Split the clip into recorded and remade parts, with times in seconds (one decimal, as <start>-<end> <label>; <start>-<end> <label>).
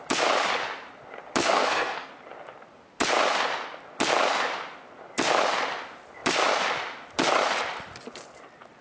0.0-1.4 recorded; 1.4-2.1 remade; 2.1-8.8 recorded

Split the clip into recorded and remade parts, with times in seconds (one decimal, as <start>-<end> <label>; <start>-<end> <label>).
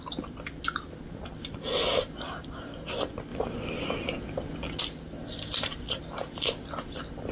0.0-7.3 recorded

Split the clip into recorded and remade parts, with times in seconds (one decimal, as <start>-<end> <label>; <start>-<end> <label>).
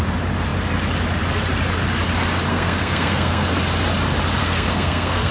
0.0-2.5 recorded; 2.5-3.4 remade; 3.4-4.4 recorded; 4.4-5.3 remade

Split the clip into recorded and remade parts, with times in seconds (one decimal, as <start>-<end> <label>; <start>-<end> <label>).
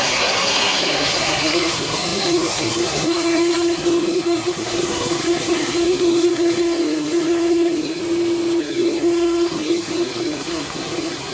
0.0-8.0 remade; 8.0-8.6 recorded; 8.6-11.3 remade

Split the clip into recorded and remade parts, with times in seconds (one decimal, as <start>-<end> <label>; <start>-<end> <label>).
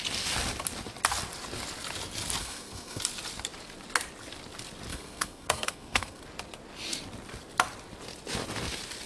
0.0-2.4 recorded; 2.4-3.0 remade; 3.0-4.9 recorded; 4.9-6.2 remade; 6.2-9.1 recorded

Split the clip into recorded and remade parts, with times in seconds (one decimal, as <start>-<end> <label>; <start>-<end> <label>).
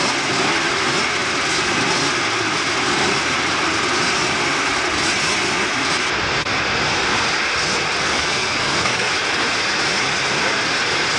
0.0-8.0 recorded; 8.0-9.1 remade; 9.1-11.2 recorded